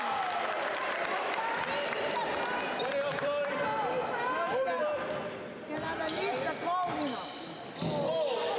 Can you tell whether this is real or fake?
real